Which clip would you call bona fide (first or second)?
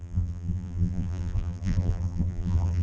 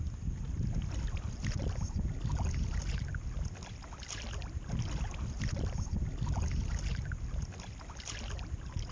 second